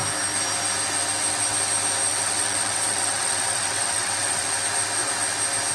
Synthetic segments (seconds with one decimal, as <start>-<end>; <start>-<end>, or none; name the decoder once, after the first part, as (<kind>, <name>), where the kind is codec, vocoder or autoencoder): 2.1-4.4 (vocoder, WaveNeXt)